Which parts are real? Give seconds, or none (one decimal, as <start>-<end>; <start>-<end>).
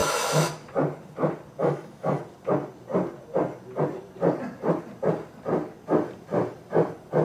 0.5-1.6; 2.2-7.2